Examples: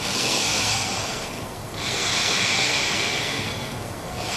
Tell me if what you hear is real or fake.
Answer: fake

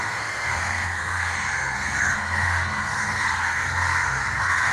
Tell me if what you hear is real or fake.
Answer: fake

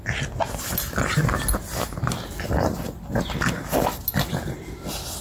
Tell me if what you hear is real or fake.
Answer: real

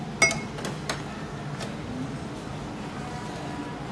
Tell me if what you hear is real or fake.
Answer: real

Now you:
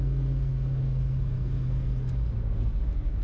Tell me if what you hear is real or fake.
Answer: fake